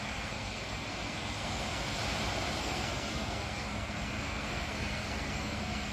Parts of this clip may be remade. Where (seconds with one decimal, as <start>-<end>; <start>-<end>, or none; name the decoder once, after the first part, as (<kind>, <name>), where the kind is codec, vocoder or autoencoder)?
0.0-2.0 (codec, SNAC); 2.6-5.9